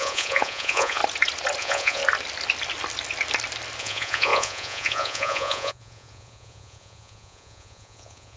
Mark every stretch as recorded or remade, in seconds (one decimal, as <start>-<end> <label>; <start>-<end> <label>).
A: 0.0-1.0 remade; 1.0-1.6 recorded; 1.6-2.0 remade; 2.0-3.8 recorded; 3.8-8.4 remade